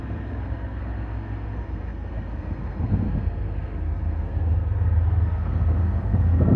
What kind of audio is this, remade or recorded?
remade